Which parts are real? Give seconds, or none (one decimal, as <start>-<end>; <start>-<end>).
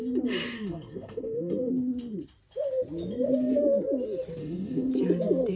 0.0-0.4; 1.7-4.4; 4.9-5.6